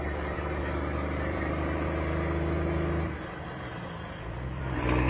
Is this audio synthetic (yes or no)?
yes